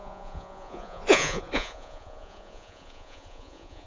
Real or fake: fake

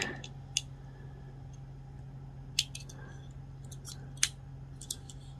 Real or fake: real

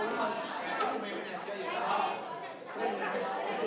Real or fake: real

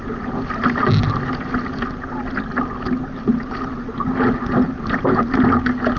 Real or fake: real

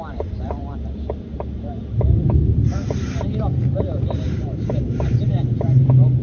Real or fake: fake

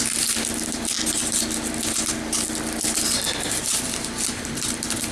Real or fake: real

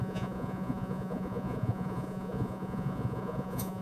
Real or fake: fake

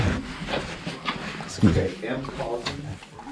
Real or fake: real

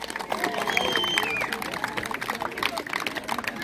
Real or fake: real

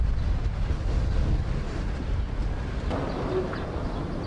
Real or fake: real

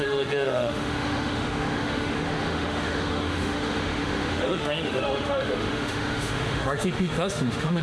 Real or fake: fake